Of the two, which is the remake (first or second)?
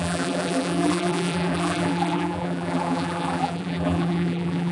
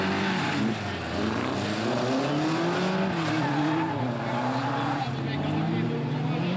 first